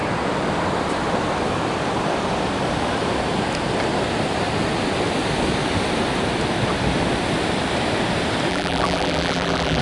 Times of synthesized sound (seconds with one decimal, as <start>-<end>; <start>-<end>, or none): 8.5-9.8